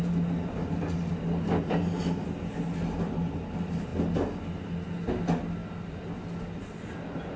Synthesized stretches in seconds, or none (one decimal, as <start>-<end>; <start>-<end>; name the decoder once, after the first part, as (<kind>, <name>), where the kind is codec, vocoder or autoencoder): none